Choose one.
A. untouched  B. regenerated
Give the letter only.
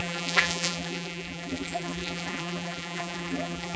B